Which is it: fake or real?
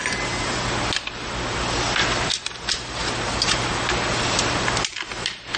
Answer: real